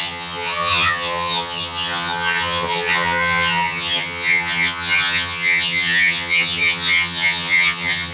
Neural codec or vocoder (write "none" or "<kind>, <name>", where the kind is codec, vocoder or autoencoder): vocoder, HiFi-GAN